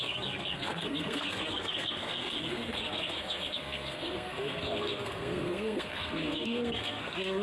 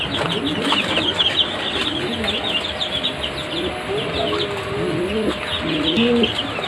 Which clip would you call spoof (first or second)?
first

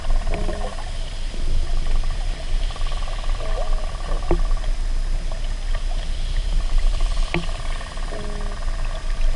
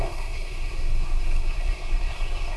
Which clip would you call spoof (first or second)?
second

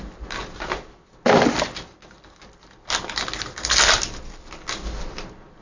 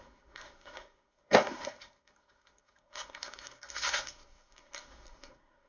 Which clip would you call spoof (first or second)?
second